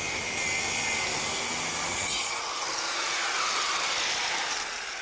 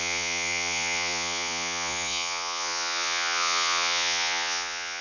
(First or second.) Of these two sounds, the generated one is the second